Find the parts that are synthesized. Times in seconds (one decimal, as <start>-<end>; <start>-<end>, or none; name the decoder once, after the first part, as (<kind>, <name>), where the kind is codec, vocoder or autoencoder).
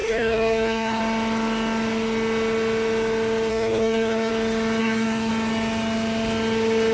0.0-1.0 (codec, SNAC); 3.5-4.3; 4.8-5.3